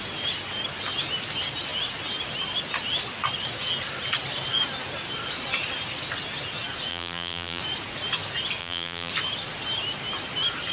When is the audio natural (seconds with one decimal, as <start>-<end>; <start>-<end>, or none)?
0.0-6.9; 7.6-8.6; 9.1-10.7